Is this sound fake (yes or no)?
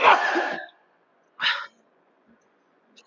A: yes